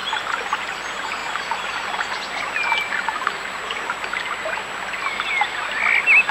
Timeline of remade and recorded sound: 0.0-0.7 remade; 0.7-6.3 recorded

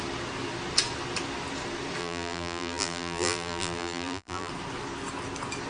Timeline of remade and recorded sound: 0.0-2.0 recorded; 2.0-4.5 remade; 4.5-5.7 recorded

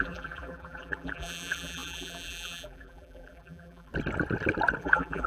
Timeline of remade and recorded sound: 0.0-3.9 remade; 3.9-4.8 recorded; 4.8-5.3 remade

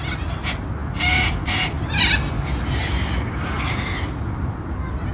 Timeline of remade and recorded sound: 0.0-5.1 recorded

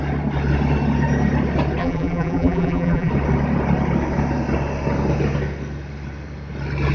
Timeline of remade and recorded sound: 0.0-1.8 recorded; 1.8-3.1 remade; 3.1-6.9 recorded

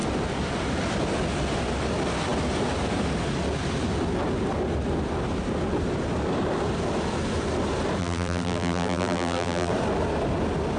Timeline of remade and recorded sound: 0.0-8.0 recorded; 8.0-9.7 remade; 9.7-10.8 recorded

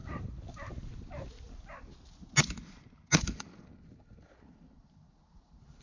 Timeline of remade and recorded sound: 0.0-5.8 recorded

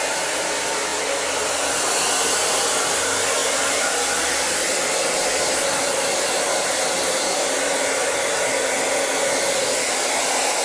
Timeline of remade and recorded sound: 0.0-3.4 recorded; 3.4-7.8 remade; 7.8-10.6 recorded